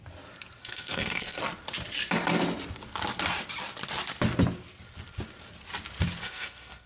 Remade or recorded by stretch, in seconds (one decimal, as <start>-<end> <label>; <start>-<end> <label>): 0.0-0.6 recorded; 0.6-1.4 remade; 1.4-6.2 recorded; 6.2-6.9 remade